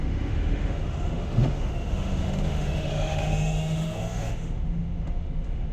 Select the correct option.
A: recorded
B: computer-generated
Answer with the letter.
B